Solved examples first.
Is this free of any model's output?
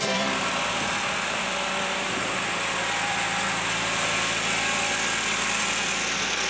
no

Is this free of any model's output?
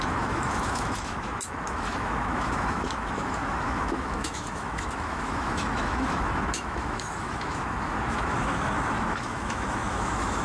no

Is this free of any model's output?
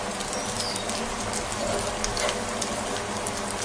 yes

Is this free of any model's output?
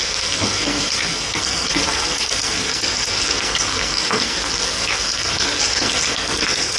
no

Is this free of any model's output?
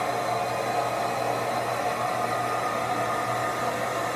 yes